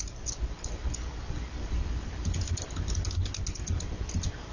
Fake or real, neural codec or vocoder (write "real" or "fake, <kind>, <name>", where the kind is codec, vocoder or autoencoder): real